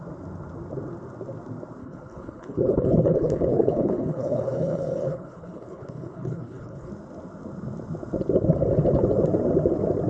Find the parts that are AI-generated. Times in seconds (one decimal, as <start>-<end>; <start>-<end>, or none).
1.8-6.9